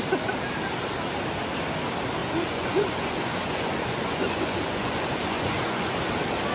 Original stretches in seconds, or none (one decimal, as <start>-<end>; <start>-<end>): 0.0-2.2; 6.1-6.5